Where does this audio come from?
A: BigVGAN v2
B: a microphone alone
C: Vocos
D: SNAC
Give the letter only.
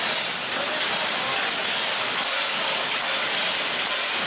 B